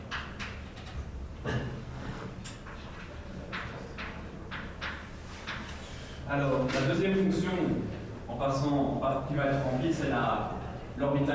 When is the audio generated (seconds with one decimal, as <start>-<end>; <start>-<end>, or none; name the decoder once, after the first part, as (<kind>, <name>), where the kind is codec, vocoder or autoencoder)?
1.8-2.3 (codec, SNAC)